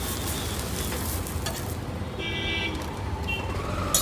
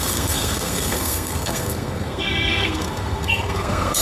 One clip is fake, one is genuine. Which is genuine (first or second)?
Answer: first